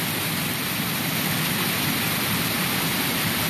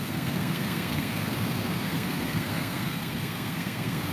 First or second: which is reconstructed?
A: second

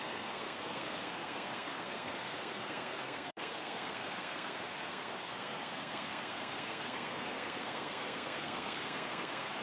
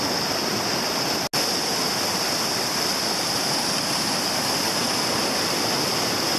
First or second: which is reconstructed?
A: first